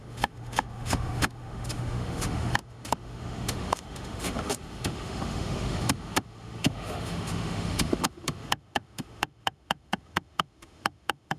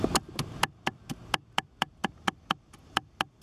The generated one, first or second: first